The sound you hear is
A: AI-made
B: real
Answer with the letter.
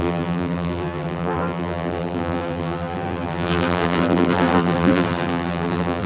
A